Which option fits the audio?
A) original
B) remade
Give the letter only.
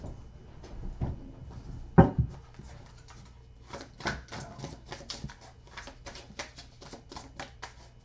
A